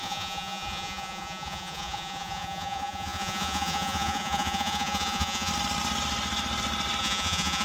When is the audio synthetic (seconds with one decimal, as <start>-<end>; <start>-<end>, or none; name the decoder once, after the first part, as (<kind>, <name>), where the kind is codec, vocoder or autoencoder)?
0.0-5.5 (vocoder, Vocos); 7.0-7.6